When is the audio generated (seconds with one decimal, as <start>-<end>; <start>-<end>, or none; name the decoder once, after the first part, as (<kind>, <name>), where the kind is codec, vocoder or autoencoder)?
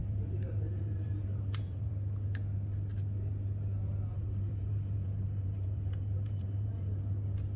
0.0-1.9 (vocoder, BigVGAN v2); 4.1-7.0